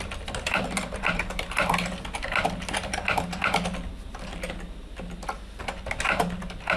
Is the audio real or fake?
real